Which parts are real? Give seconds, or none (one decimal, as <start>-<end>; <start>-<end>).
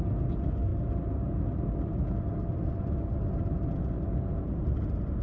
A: 0.0-5.2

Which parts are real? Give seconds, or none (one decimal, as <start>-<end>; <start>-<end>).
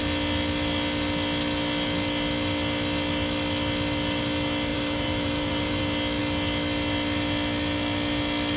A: 0.0-4.7; 5.8-8.6